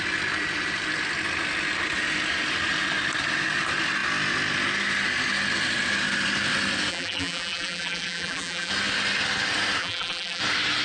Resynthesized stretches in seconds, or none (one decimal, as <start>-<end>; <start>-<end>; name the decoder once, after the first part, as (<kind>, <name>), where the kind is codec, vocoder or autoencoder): 6.9-8.7 (vocoder, BigVGAN v2); 9.8-10.4